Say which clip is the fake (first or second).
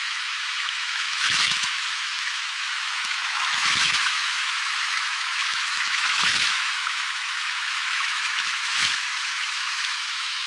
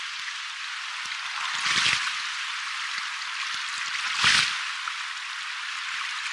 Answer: first